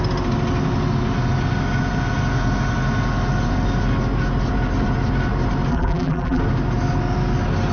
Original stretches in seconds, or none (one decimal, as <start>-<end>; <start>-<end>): 0.0-5.7; 6.4-7.7